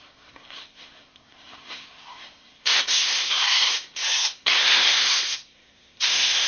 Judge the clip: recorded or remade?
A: remade